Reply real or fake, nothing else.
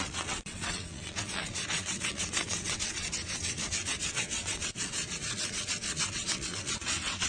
fake